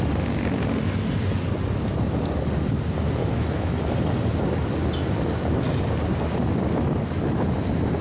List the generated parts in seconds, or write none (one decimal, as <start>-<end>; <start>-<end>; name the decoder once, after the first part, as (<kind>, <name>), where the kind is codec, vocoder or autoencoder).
3.2-3.7 (autoencoder, DAC-VAE)